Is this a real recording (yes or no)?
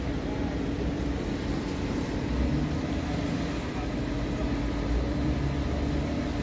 yes